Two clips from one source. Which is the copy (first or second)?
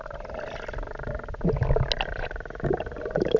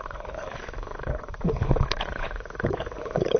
second